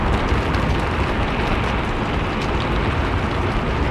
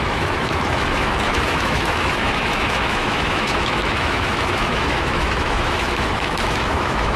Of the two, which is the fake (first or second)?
second